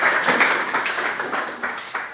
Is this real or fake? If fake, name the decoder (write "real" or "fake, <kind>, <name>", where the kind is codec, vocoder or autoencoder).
fake, codec, DAC